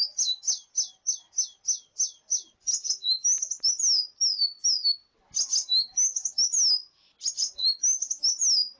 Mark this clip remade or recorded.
recorded